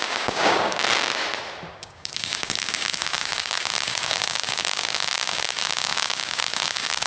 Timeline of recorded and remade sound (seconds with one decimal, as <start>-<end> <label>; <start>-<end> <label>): 0.0-0.8 remade; 0.8-1.7 recorded; 1.7-7.1 remade

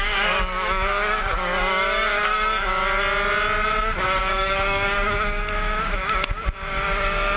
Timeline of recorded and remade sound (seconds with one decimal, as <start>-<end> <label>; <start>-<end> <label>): 0.0-2.8 remade; 2.8-4.2 recorded; 4.2-7.4 remade